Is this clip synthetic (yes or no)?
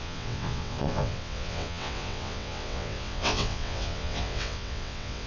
yes